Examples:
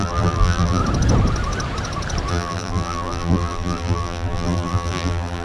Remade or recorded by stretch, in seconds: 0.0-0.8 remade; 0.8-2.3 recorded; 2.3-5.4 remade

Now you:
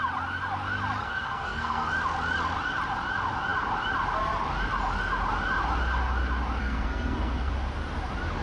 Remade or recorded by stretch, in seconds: 0.0-1.0 recorded; 1.0-1.9 remade; 1.9-6.6 recorded; 6.6-7.5 remade; 7.5-8.4 recorded

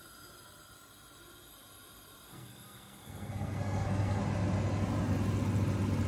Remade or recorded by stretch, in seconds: 0.0-2.3 recorded; 2.3-4.2 remade; 4.2-6.1 recorded